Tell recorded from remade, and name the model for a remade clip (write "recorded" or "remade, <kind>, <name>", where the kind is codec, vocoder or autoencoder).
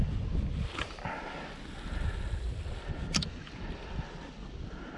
recorded